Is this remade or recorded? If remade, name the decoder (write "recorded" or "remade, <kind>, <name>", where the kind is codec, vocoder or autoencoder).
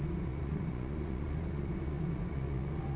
remade, vocoder, Vocos